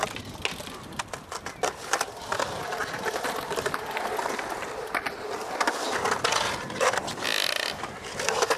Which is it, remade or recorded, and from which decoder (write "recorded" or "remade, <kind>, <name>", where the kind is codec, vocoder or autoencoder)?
recorded